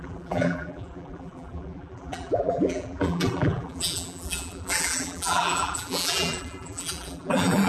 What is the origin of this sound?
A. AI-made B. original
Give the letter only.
A